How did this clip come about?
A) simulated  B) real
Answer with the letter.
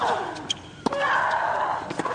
B